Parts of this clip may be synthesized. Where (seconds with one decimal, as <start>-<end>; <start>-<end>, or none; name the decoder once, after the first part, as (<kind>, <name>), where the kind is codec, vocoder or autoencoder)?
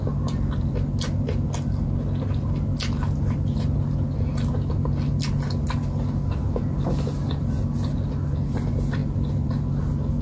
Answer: none